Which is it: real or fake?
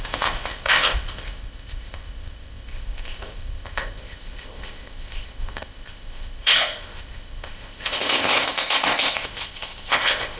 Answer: fake